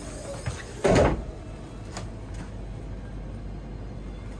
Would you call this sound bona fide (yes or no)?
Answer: yes